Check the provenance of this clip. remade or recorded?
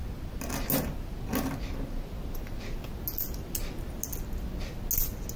recorded